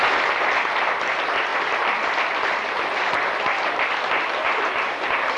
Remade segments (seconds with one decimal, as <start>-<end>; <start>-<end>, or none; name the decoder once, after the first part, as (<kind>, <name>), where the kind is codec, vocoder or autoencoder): none